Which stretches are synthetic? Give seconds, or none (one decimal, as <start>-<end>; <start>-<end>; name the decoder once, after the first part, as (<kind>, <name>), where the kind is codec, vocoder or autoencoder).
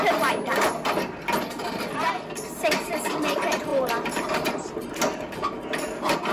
3.7-5.0 (vocoder, BigVGAN v2)